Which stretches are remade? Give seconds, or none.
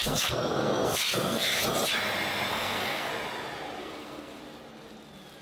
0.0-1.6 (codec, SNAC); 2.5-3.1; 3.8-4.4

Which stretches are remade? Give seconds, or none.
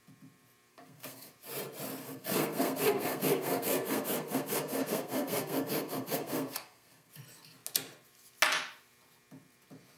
0.7-1.3 (codec, SNAC); 2.0-7.1